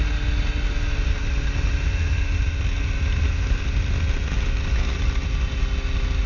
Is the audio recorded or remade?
recorded